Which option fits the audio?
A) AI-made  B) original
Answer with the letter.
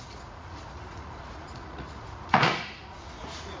A